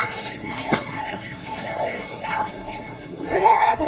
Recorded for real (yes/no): no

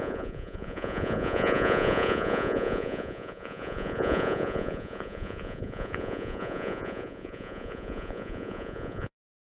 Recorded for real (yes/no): no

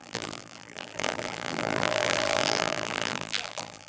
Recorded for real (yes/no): no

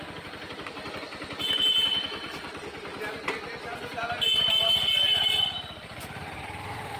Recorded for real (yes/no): yes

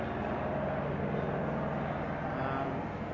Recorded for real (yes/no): yes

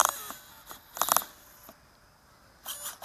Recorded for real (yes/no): yes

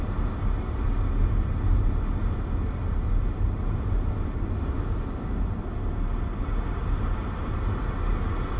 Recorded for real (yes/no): yes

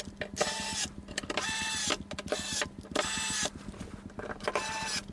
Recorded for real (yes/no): yes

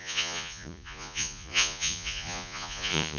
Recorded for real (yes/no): no